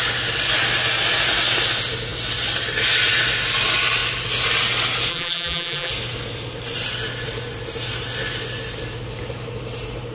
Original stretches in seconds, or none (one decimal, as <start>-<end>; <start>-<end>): 0.0-5.1; 5.9-10.1